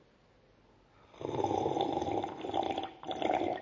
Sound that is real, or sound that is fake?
real